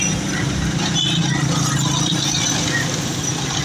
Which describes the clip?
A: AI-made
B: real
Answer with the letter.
B